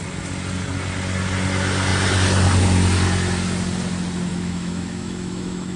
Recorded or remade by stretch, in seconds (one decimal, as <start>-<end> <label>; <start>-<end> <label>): 0.0-4.3 recorded; 4.3-5.8 remade